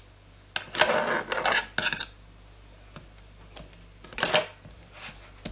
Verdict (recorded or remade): recorded